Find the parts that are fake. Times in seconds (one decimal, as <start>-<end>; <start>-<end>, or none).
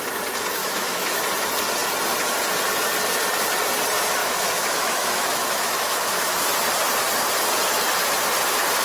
0.6-1.2; 4.2-6.4